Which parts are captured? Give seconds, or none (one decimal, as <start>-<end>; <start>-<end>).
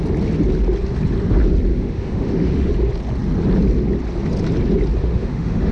0.0-1.7; 2.7-5.0